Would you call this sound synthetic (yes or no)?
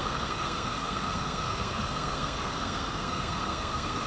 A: yes